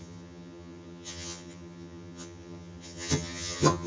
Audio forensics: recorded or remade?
remade